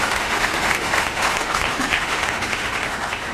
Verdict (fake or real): fake